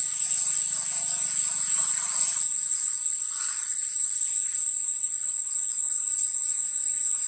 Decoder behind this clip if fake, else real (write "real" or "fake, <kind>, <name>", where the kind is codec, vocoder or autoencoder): real